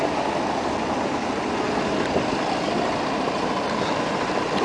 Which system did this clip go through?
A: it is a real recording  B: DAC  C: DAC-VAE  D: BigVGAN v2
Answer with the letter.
A